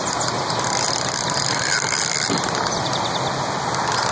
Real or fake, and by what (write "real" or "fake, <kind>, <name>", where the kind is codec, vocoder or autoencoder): fake, vocoder, BigVGAN v2